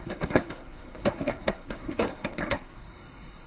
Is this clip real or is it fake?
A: fake